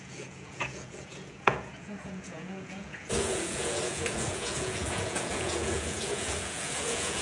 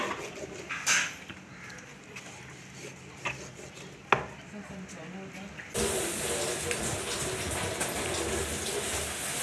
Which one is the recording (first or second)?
second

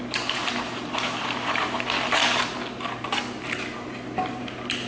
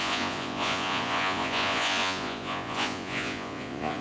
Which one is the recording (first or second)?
first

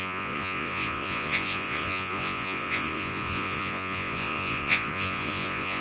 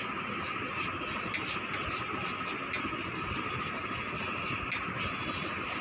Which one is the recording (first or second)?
second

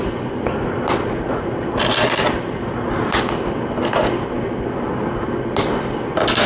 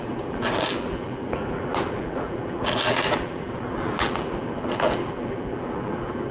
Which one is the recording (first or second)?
first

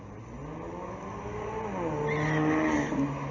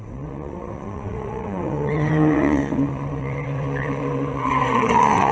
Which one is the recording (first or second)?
first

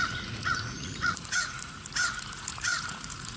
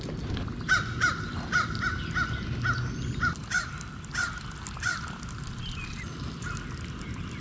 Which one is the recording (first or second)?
second